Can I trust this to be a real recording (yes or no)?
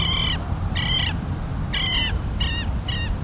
yes